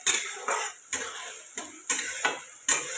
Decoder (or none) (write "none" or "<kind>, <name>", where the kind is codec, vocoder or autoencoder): none